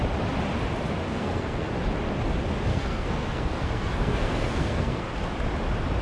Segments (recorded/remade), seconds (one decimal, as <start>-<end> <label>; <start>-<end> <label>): 0.0-1.1 recorded; 1.1-1.7 remade; 1.7-2.7 recorded; 2.7-5.1 remade; 5.1-6.0 recorded